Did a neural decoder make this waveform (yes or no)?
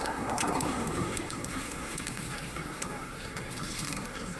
yes